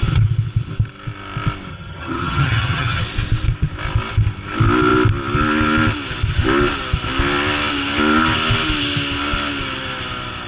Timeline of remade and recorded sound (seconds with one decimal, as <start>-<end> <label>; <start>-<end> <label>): 0.0-1.7 recorded; 1.7-3.0 remade; 3.0-10.5 recorded